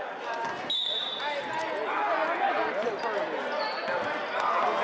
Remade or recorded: recorded